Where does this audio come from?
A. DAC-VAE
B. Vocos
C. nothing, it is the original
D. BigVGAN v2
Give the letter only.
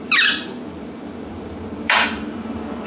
D